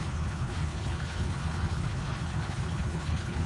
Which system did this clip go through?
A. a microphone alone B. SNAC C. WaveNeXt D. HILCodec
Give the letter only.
D